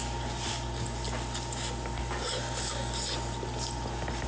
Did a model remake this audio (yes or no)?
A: no